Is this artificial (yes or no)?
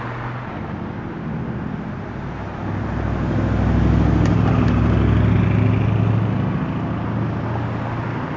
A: no